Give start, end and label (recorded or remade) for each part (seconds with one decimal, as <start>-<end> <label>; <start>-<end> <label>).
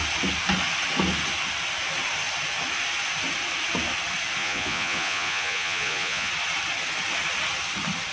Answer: 0.0-4.4 recorded; 4.4-6.3 remade; 6.3-8.1 recorded